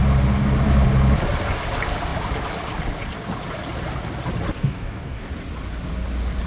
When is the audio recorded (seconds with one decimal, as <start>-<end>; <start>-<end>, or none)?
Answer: 0.0-4.6; 5.3-6.5